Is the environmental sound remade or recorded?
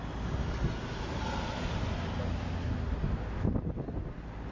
recorded